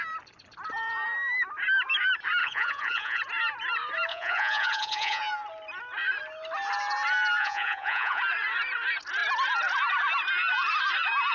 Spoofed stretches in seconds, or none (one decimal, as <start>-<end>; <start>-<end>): 2.4-3.2; 4.1-5.2; 7.4-8.2